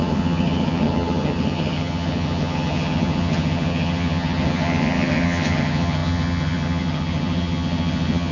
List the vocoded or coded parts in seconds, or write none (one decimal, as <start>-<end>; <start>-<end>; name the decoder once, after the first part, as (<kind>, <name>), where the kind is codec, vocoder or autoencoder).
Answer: 0.0-8.3 (vocoder, HiFi-GAN)